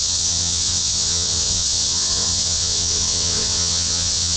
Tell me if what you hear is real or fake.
fake